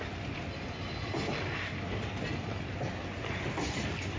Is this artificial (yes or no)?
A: no